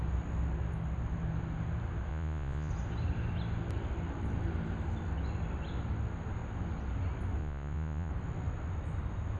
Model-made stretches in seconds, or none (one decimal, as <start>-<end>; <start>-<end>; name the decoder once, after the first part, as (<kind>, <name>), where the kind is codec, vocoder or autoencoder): 2.1-2.7 (vocoder, Vocos); 7.4-8.1